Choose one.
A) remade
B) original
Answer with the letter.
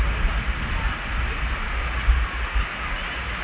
B